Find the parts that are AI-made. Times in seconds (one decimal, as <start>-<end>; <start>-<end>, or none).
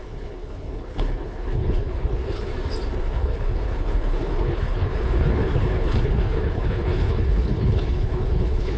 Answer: 0.0-2.5; 3.0-8.8